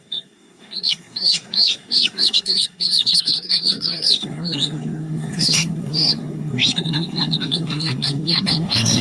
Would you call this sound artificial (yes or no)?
yes